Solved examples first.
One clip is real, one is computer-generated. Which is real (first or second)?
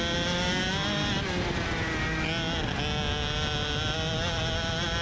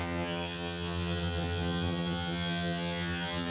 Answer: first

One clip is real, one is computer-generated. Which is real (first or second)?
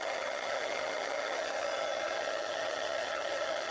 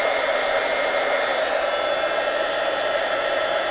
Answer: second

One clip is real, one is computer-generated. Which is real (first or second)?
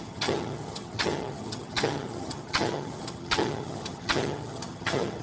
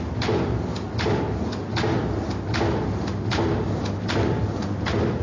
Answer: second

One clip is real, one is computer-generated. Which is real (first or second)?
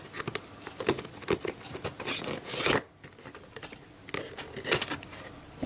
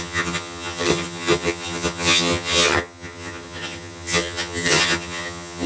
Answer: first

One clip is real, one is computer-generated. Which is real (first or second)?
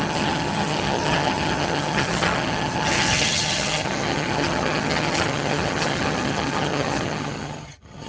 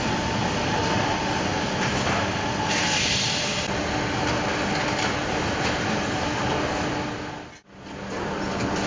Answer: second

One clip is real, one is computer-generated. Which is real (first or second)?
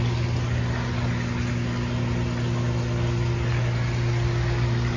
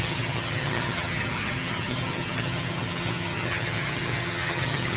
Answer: first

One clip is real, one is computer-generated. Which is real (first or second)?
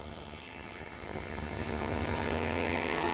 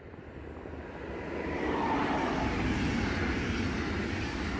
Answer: second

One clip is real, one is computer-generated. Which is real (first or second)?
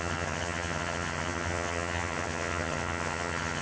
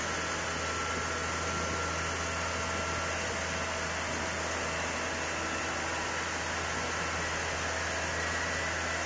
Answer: second